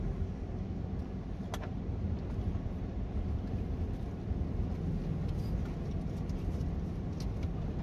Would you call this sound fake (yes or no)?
no